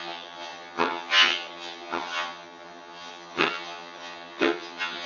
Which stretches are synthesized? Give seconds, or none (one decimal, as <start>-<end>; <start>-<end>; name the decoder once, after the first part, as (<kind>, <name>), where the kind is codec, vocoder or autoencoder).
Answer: 0.0-5.1 (vocoder, HiFi-GAN)

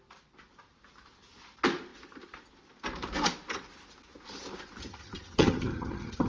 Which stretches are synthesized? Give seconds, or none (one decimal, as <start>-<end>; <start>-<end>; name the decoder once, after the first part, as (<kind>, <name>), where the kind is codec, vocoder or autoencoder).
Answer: 4.8-6.3 (vocoder, HiFi-GAN)

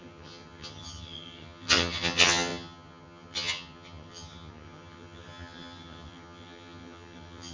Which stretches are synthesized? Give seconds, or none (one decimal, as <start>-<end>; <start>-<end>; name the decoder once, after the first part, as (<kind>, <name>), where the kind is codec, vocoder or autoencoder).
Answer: 0.0-7.5 (vocoder, HiFi-GAN)

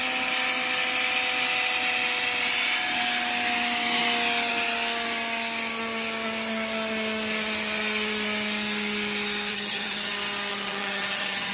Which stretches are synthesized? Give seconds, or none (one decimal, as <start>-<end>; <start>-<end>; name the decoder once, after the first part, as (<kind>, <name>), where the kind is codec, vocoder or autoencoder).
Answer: 9.5-10.1 (vocoder, HiFi-GAN); 10.5-11.5

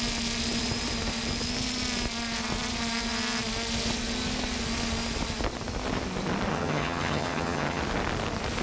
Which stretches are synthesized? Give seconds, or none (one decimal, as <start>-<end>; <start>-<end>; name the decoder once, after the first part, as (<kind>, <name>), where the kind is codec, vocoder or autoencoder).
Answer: 6.5-7.8 (vocoder, HiFi-GAN)

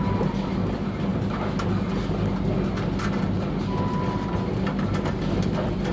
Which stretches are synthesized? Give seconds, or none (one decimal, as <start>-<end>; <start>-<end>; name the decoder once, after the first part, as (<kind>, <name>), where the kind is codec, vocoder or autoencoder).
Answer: none